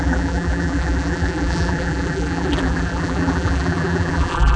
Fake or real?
fake